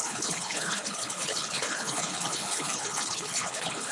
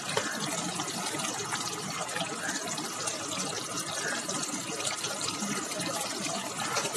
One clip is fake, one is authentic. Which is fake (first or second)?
first